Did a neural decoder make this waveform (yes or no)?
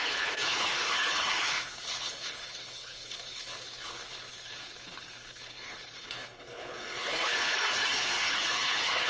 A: yes